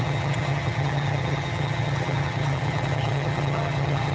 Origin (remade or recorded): remade